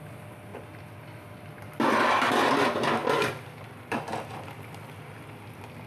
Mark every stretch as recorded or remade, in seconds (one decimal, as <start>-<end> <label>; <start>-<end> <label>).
0.0-0.5 recorded; 0.5-2.3 remade; 2.3-3.0 recorded; 3.0-5.1 remade; 5.1-5.9 recorded